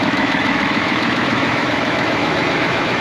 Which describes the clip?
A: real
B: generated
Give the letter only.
B